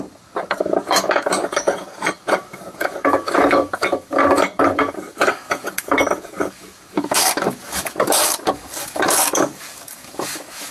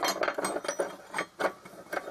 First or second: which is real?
second